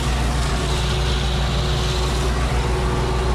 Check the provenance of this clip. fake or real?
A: real